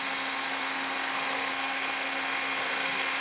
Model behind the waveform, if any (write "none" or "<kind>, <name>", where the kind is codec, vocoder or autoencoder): codec, SNAC